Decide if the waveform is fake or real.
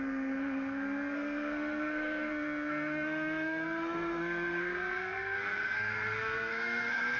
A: fake